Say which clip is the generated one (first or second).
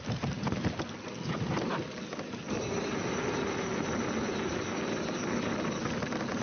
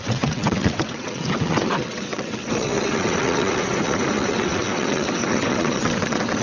second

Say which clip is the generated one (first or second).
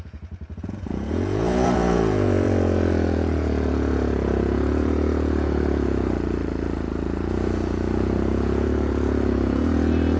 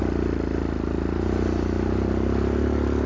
first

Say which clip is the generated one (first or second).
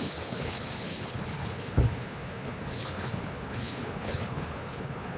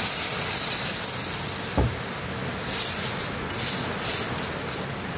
first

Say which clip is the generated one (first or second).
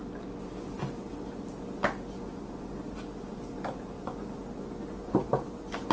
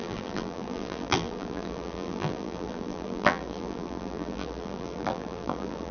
second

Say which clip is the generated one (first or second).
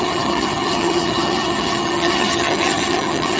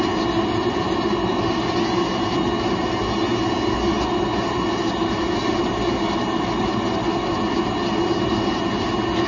first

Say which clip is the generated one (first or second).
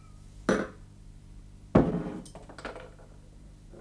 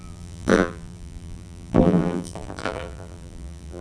second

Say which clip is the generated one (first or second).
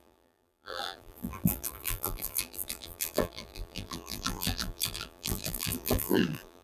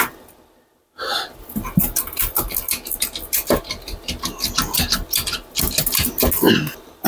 first